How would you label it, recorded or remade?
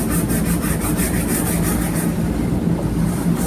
recorded